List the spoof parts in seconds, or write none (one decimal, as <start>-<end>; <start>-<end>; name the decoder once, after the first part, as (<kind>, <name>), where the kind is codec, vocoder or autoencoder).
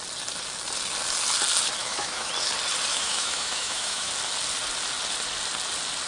1.8-2.3 (autoencoder, DAC-VAE); 2.9-4.1